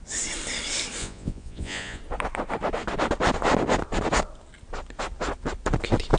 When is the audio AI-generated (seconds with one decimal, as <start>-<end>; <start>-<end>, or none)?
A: 1.0-2.0